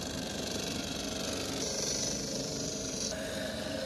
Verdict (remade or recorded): remade